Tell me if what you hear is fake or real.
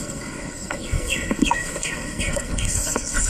fake